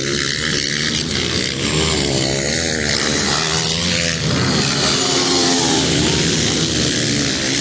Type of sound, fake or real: real